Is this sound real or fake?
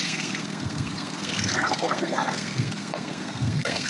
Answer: fake